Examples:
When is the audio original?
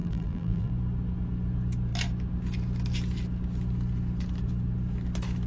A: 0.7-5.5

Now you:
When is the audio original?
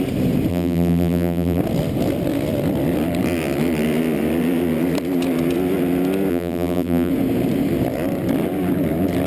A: 0.0-0.5; 1.6-6.3; 7.1-9.3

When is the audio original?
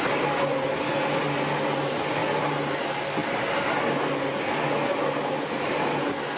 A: 0.0-6.4